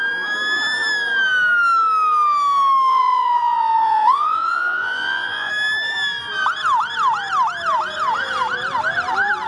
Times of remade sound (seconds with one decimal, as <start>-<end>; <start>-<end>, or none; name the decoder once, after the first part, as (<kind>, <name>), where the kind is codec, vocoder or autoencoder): 2.9-5.5 (vocoder, Vocos)